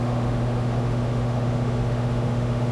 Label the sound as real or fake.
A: fake